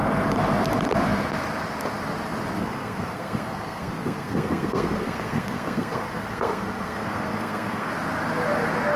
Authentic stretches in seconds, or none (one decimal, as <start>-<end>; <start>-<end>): 0.0-2.6; 7.9-9.0